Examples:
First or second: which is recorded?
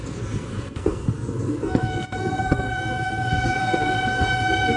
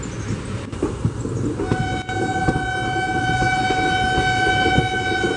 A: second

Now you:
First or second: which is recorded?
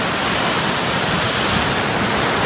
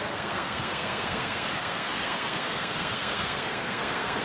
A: first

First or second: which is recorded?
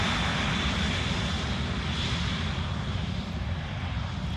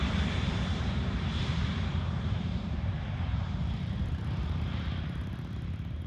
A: first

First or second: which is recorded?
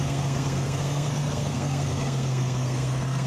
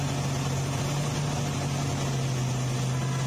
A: second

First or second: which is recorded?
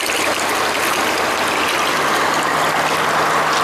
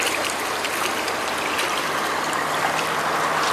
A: first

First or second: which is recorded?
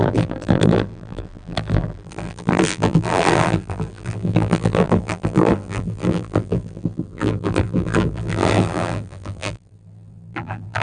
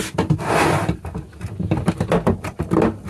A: second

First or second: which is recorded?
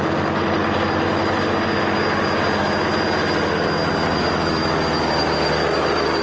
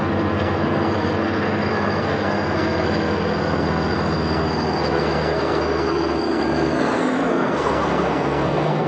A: first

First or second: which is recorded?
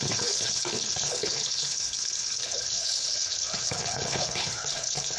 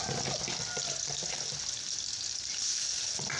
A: second